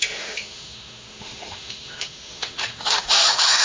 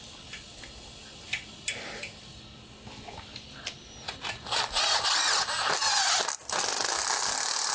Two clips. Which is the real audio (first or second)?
second